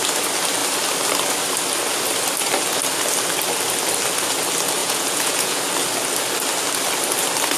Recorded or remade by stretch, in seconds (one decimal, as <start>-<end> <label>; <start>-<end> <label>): 0.0-4.8 recorded; 4.8-5.6 remade; 5.6-7.6 recorded